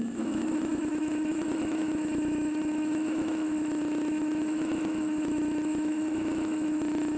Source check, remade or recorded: remade